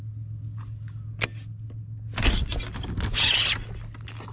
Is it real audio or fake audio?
real